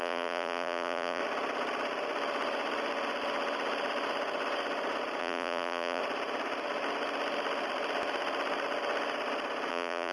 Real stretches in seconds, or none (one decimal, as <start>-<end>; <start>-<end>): 1.2-5.2; 6.0-9.7